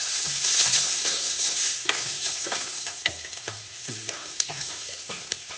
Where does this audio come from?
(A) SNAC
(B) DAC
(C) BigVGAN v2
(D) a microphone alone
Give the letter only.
A